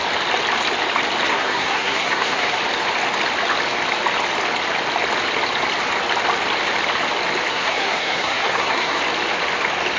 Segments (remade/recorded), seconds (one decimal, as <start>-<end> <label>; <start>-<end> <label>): 0.0-1.3 recorded; 1.3-2.6 remade; 2.6-7.5 recorded; 7.5-9.0 remade; 9.0-10.0 recorded